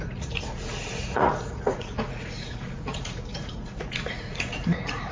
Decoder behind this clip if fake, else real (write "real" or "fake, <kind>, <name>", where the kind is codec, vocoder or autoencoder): fake, vocoder, Vocos